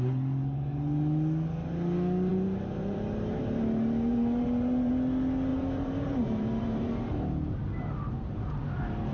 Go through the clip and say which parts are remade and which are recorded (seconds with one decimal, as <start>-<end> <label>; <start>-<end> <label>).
0.0-2.3 recorded; 2.3-4.9 remade; 4.9-5.5 recorded; 5.5-8.4 remade; 8.4-9.1 recorded